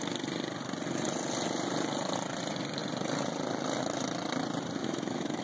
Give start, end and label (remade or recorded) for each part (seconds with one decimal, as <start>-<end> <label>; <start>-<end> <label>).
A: 0.0-4.8 recorded; 4.8-5.4 remade